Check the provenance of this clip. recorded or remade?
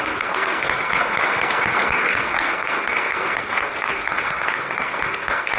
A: remade